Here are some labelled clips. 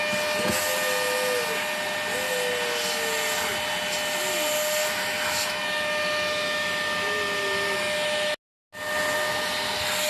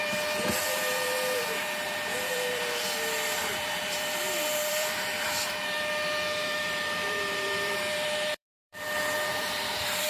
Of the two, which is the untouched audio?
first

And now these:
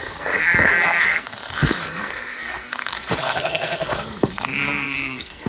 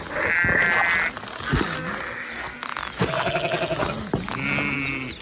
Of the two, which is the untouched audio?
second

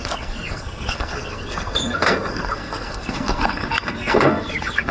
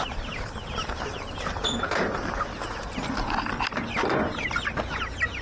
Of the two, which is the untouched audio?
second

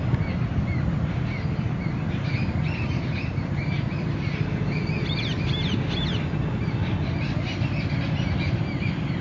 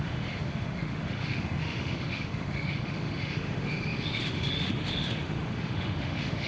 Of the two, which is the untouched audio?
first